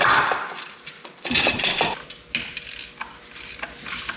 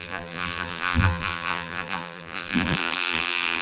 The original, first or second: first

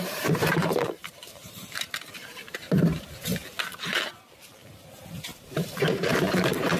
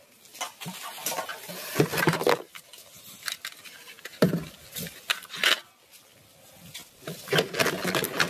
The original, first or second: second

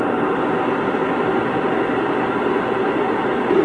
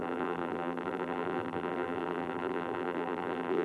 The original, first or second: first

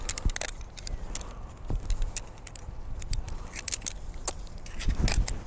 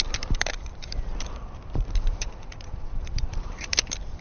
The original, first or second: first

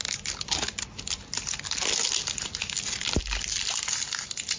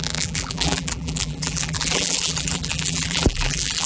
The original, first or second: first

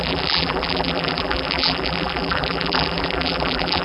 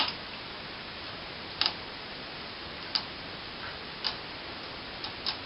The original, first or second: second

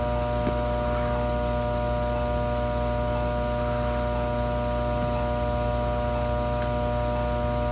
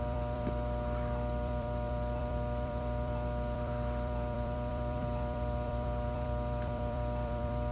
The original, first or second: first